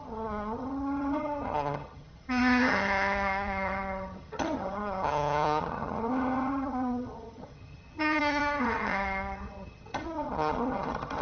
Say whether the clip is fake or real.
fake